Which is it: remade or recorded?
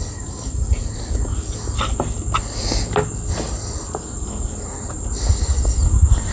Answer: recorded